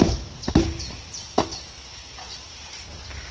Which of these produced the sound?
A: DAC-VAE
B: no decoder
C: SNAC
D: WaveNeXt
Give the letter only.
B